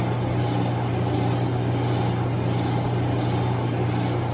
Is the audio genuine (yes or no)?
yes